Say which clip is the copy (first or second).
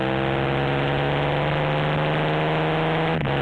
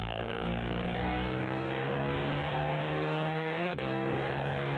second